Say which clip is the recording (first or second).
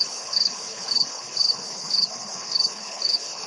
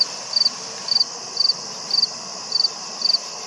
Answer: second